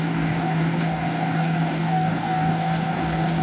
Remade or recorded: remade